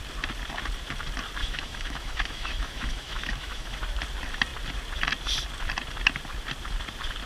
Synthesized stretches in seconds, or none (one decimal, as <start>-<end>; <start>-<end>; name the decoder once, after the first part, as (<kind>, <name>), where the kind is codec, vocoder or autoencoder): 1.4-3.8 (autoencoder, DAC-VAE)